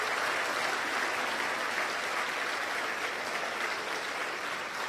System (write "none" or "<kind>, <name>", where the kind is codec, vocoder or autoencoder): vocoder, BigVGAN v2